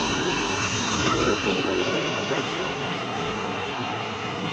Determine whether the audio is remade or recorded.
remade